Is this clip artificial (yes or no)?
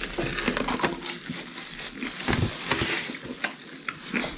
no